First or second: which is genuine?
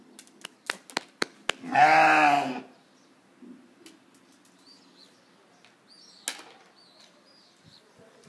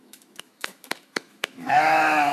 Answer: first